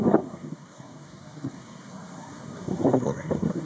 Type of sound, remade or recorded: remade